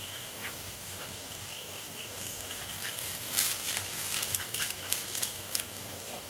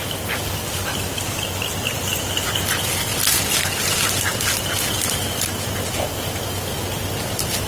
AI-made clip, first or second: first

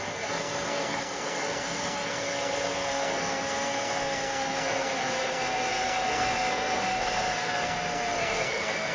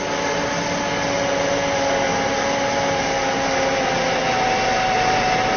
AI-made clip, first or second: first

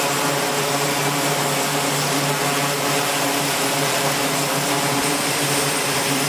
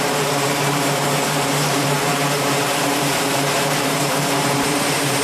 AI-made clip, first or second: second